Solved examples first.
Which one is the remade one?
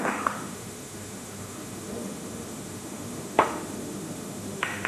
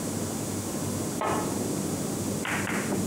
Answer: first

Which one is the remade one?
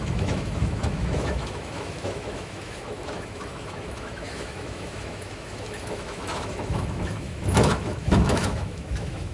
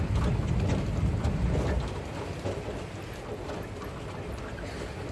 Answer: first